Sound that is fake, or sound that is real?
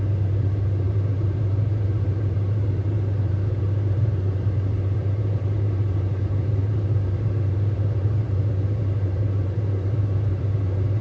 fake